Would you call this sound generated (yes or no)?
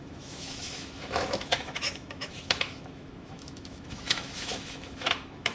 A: yes